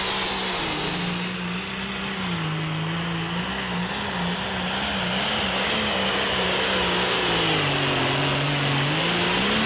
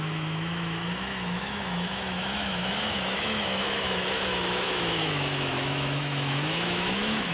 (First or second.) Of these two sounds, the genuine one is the first